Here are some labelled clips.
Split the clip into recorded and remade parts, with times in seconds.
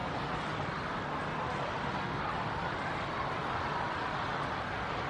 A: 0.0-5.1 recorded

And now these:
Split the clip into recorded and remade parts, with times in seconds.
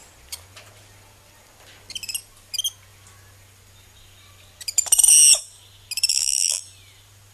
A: 0.0-6.1 recorded; 6.1-6.6 remade; 6.6-7.3 recorded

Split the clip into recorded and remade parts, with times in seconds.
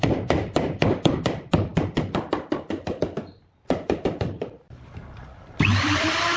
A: 0.0-6.4 remade